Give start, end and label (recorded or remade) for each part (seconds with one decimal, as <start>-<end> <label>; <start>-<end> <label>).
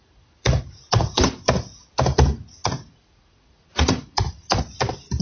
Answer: 0.0-1.2 remade; 1.2-2.6 recorded; 2.6-4.6 remade; 4.6-5.2 recorded